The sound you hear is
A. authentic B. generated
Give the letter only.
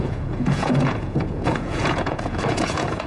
B